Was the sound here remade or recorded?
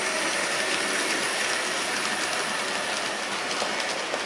recorded